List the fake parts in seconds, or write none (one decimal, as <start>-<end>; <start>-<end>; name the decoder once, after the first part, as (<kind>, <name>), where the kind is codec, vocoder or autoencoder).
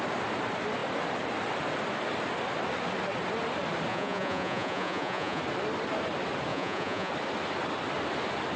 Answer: 3.9-5.4 (vocoder, Vocos); 6.5-7.1